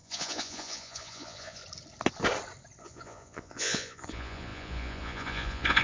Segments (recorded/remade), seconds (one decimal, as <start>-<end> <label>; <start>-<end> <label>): 0.0-1.6 remade; 1.6-2.8 recorded; 2.8-5.8 remade